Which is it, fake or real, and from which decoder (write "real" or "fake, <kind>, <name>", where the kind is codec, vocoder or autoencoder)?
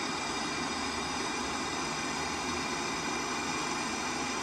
real